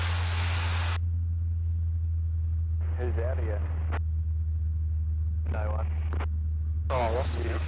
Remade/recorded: recorded